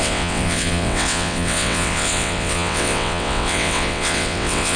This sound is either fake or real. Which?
fake